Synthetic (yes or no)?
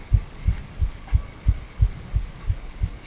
yes